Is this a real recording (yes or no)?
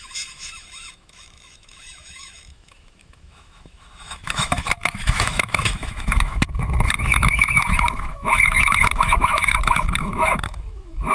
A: no